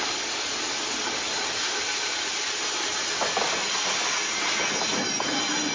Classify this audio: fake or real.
real